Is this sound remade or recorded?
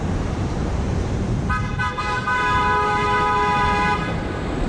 remade